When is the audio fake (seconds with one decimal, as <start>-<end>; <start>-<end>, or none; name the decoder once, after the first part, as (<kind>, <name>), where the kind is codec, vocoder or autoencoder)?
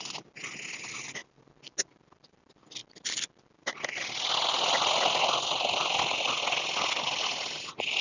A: none